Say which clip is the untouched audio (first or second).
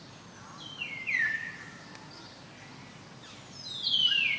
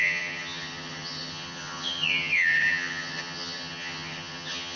first